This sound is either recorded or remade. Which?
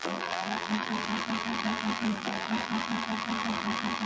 remade